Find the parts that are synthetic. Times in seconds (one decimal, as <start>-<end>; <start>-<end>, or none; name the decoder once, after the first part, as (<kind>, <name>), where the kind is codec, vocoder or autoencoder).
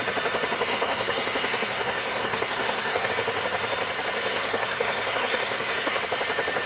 0.7-3.1 (codec, SNAC); 4.3-6.0